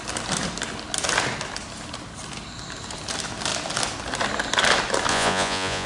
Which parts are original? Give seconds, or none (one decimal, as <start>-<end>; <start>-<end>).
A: 0.0-5.1